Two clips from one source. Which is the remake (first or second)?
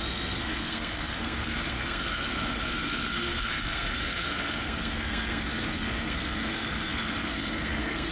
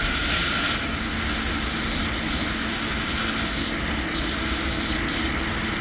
first